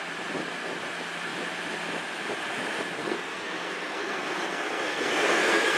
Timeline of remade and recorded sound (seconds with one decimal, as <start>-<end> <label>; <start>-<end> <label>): 0.0-3.0 recorded; 3.0-5.8 remade